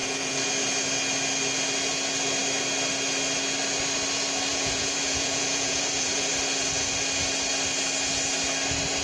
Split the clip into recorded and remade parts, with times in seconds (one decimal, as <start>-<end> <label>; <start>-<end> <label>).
0.0-0.5 remade; 0.5-4.5 recorded; 4.5-6.3 remade; 6.3-9.0 recorded